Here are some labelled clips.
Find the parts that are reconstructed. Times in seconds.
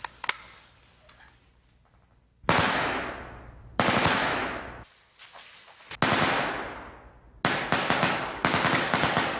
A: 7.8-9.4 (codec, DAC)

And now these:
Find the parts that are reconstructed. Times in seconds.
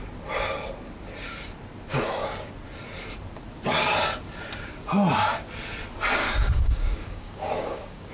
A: 1.9-2.5 (codec, DAC); 6.2-8.1